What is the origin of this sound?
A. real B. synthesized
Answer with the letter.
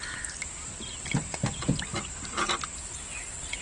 A